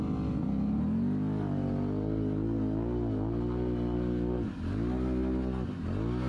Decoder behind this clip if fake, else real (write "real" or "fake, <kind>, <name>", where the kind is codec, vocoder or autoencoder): real